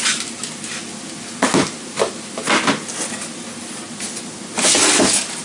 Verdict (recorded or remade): recorded